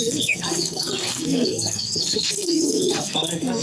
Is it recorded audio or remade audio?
remade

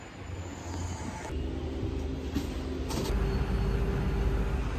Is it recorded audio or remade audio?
recorded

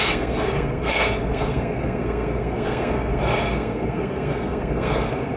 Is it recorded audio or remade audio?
remade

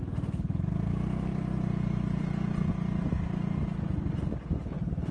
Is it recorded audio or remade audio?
recorded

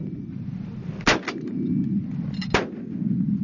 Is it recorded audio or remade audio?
recorded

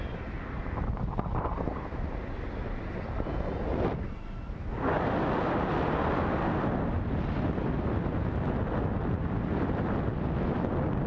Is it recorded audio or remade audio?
recorded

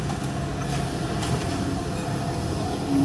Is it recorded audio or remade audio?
recorded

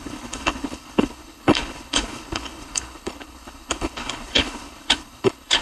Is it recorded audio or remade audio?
remade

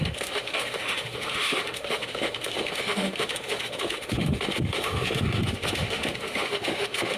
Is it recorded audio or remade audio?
remade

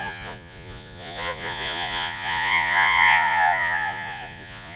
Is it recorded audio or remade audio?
remade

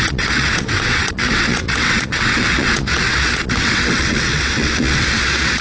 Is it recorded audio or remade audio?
remade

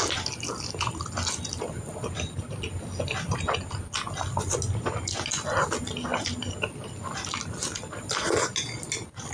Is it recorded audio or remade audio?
recorded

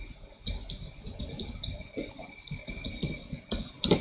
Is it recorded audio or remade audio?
recorded